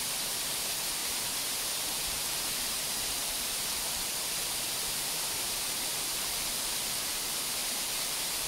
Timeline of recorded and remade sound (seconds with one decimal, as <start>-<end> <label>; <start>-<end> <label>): 0.0-3.2 recorded; 3.2-5.5 remade; 5.5-5.9 recorded; 5.9-6.9 remade; 6.9-7.6 recorded; 7.6-8.5 remade